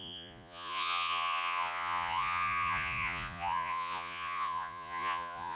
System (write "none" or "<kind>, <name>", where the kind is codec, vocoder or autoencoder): vocoder, Vocos